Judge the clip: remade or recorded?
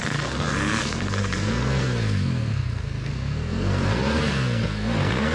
remade